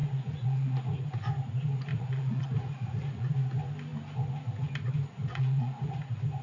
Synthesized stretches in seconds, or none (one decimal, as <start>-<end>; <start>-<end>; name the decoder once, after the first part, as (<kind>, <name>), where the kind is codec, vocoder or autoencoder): 0.0-1.1 (vocoder, Vocos); 1.9-3.3; 5.2-6.0